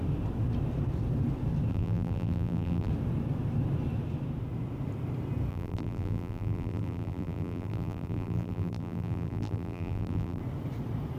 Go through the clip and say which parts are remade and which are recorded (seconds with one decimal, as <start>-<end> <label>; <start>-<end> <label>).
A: 0.0-1.7 recorded; 1.7-2.9 remade; 2.9-5.5 recorded; 5.5-10.4 remade; 10.4-11.2 recorded